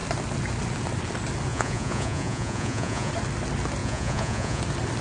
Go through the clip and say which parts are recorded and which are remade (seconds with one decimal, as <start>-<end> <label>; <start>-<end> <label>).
0.0-1.5 recorded; 1.5-3.1 remade; 3.1-3.8 recorded; 3.8-4.6 remade; 4.6-5.0 recorded